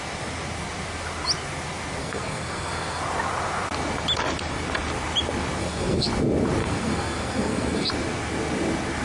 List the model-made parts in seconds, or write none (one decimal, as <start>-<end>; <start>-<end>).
2.0-3.0; 5.6-6.1; 6.6-7.9